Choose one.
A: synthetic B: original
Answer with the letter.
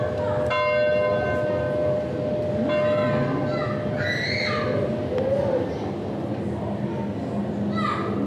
B